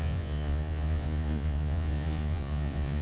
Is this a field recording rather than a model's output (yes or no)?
no